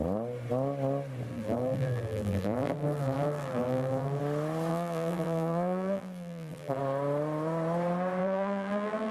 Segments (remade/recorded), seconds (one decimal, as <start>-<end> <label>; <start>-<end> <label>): 0.0-1.3 recorded; 1.3-4.2 remade; 4.2-4.7 recorded; 4.7-6.8 remade; 6.8-8.2 recorded; 8.2-9.1 remade